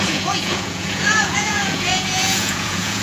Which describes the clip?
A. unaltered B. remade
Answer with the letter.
B